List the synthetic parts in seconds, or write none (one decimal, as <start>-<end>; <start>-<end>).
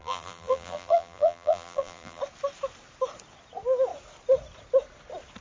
0.0-2.2